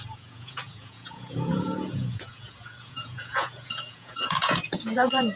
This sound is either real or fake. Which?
fake